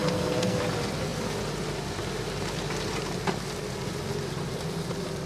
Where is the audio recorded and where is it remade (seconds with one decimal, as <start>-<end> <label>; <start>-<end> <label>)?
0.0-0.6 remade; 0.6-5.3 recorded